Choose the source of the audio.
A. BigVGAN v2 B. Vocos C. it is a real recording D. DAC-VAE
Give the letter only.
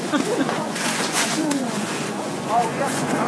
B